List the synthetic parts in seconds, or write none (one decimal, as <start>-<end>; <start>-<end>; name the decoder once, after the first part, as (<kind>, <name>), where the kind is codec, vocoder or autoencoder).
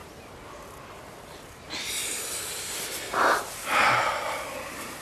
2.0-4.0 (vocoder, BigVGAN v2)